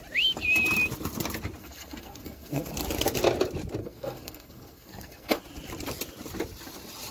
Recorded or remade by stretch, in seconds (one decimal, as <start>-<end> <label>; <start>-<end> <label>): 0.0-1.6 recorded; 1.6-2.7 remade; 2.7-3.8 recorded; 3.8-5.4 remade; 5.4-7.1 recorded